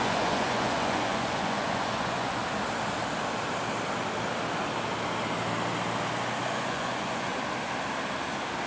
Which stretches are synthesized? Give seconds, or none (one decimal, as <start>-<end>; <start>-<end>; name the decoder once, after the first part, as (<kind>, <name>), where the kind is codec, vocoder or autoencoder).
0.0-2.4 (vocoder, Vocos); 6.5-7.3